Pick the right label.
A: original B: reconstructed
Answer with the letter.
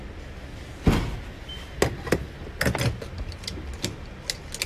A